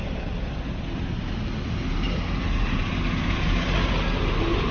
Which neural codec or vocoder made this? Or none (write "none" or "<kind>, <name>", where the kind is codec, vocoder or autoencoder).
none